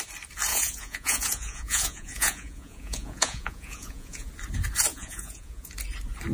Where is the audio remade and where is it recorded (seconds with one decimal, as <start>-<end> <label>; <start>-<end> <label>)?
0.0-0.5 recorded; 0.5-4.3 remade; 4.3-4.9 recorded; 4.9-5.7 remade; 5.7-6.3 recorded